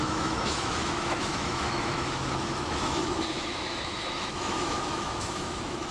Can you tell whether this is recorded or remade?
remade